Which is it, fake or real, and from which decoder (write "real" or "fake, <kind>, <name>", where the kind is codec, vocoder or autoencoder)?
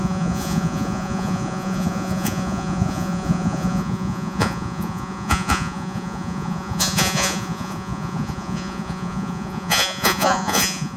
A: fake, vocoder, Vocos